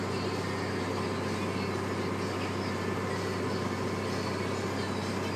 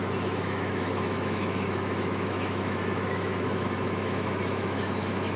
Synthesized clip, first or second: second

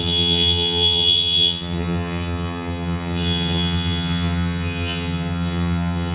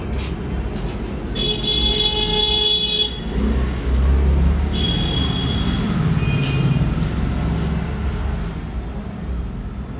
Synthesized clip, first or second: first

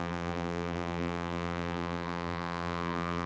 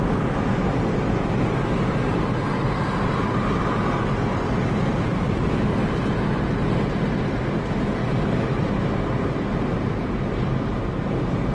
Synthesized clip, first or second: first